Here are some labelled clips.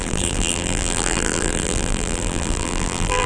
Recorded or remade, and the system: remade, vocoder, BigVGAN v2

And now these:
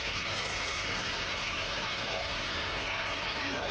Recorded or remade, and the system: remade, codec, SNAC